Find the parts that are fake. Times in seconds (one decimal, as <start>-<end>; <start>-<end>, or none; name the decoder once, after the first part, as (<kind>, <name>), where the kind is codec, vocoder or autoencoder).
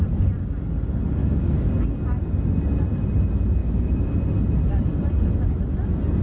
1.2-1.7 (autoencoder, DAC-VAE); 3.6-4.1